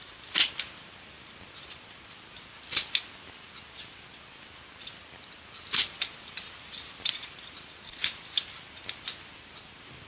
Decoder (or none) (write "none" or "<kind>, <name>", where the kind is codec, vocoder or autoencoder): none